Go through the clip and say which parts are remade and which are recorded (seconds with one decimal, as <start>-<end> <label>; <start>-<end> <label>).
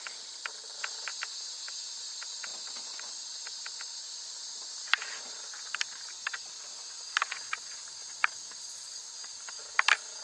0.0-2.5 recorded; 2.5-3.2 remade; 3.2-10.2 recorded